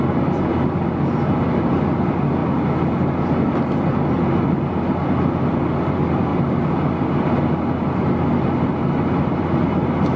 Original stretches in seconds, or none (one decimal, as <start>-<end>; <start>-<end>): 0.0-10.2